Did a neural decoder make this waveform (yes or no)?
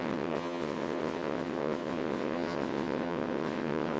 yes